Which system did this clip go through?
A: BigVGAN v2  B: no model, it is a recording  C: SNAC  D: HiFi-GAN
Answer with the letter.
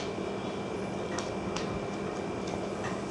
B